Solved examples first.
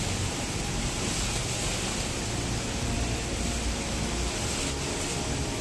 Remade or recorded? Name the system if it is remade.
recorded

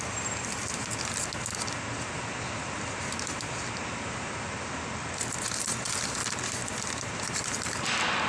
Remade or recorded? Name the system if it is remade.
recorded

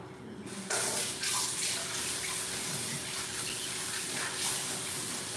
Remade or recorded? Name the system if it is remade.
recorded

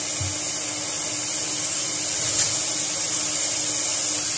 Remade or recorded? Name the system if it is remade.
recorded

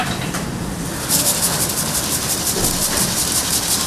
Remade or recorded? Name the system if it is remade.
remade, vocoder, BigVGAN v2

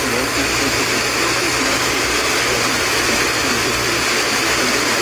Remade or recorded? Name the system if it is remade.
recorded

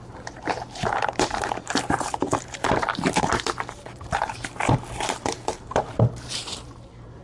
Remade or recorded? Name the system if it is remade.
remade, vocoder, BigVGAN v2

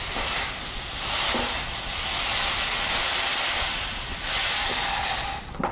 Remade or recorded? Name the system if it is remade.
recorded